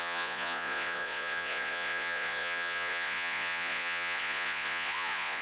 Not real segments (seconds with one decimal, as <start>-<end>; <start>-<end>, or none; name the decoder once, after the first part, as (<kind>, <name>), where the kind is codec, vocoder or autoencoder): 0.0-5.4 (vocoder, Vocos)

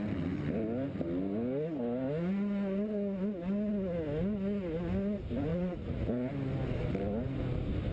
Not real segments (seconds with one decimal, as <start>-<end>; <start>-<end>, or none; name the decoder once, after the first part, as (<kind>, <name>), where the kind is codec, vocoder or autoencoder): 5.5-6.3 (vocoder, Vocos)